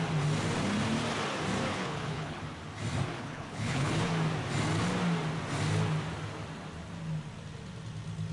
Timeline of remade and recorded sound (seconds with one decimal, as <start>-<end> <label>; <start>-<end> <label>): 0.0-1.7 recorded; 1.7-2.4 remade; 2.4-3.1 recorded; 3.1-4.0 remade; 4.0-8.3 recorded